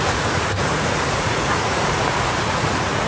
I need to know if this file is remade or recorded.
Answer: remade